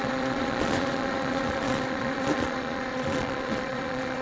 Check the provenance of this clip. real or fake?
fake